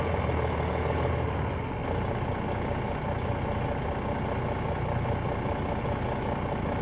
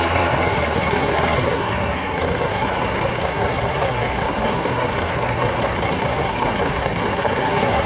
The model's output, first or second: second